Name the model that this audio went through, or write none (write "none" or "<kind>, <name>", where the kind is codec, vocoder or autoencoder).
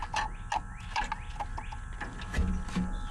none